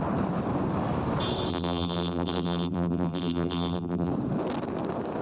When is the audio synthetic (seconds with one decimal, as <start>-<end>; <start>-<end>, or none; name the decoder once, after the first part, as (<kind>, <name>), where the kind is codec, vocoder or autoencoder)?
1.5-4.1 (vocoder, BigVGAN v2)